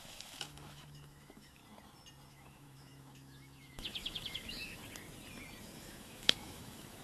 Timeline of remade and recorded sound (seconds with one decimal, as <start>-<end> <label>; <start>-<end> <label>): 0.0-1.6 remade; 1.6-2.3 recorded; 2.3-4.8 remade; 4.8-5.6 recorded; 5.6-7.0 remade